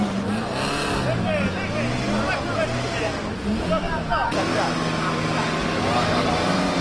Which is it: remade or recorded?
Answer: recorded